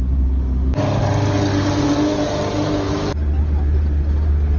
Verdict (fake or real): real